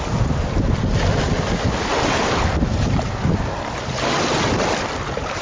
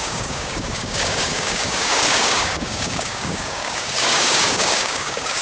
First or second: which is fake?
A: second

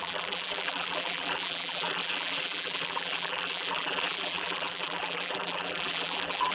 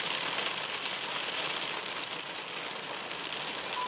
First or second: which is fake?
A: first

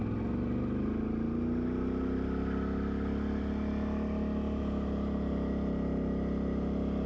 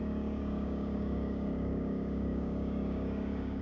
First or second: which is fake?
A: second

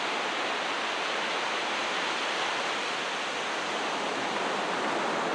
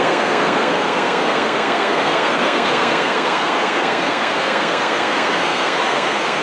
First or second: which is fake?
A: second